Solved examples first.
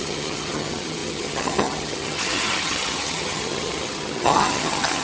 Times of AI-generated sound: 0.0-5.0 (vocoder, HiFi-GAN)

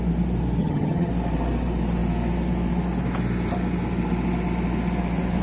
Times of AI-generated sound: 0.6-1.1 (vocoder, HiFi-GAN)

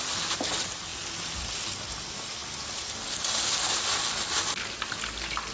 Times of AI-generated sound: none

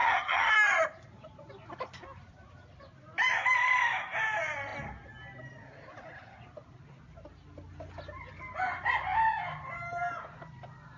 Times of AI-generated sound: 0.0-0.5 (vocoder, HiFi-GAN)

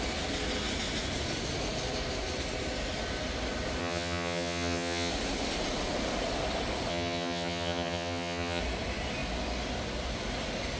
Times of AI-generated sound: 3.8-5.1 (vocoder, HiFi-GAN); 6.9-8.6

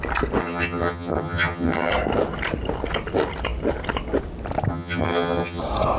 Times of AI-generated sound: 0.4-1.9 (vocoder, HiFi-GAN); 4.7-5.6

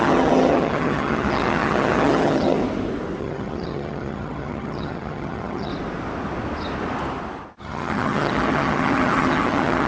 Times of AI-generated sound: 0.0-2.6 (vocoder, HiFi-GAN); 3.2-5.7; 7.6-9.9